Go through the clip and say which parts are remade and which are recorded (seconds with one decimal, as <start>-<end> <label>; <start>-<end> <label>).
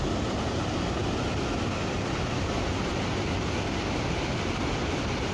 0.0-5.3 recorded